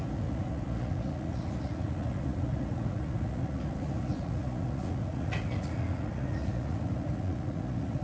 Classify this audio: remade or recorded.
remade